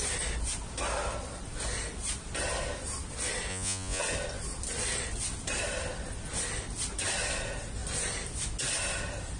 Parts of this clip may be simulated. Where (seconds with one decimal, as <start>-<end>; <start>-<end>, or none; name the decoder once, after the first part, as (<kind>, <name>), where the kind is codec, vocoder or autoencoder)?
3.5-4.0 (vocoder, Vocos)